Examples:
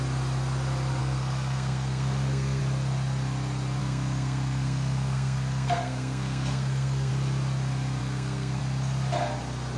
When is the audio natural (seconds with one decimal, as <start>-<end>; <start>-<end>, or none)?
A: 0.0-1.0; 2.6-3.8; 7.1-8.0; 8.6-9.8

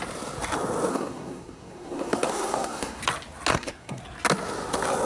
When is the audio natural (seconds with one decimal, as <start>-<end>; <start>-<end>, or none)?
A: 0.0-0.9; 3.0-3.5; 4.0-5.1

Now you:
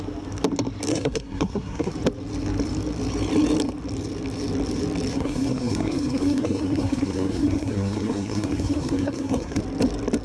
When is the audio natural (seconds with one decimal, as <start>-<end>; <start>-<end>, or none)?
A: 0.0-0.9; 1.9-5.1; 9.6-10.2

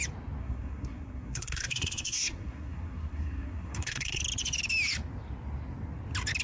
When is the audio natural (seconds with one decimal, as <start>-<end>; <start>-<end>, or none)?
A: 0.0-0.4; 4.2-6.4

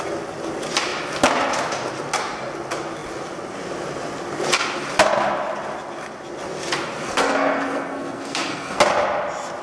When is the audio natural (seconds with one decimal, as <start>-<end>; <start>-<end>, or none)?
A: 0.0-7.0; 8.8-9.6

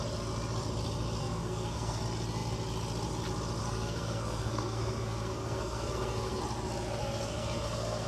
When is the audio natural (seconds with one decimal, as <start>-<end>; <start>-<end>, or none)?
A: 0.0-1.2; 2.0-3.6; 6.4-7.0